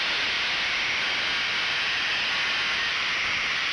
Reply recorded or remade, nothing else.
recorded